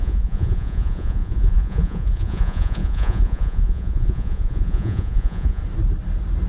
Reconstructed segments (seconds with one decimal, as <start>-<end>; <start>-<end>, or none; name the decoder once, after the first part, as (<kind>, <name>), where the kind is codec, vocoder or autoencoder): 0.0-5.6 (vocoder, Vocos)